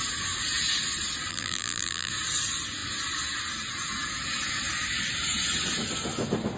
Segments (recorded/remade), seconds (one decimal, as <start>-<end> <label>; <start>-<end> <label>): 0.0-1.3 recorded; 1.3-2.1 remade; 2.1-6.6 recorded